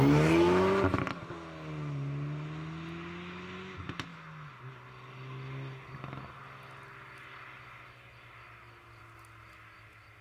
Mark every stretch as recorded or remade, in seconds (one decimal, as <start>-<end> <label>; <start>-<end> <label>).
0.0-10.2 recorded